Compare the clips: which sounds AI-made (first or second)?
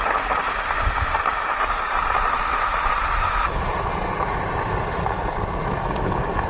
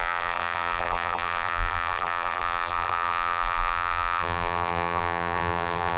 second